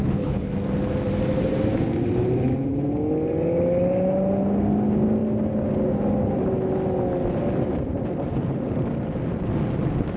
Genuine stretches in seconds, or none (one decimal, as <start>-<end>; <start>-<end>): 0.5-10.2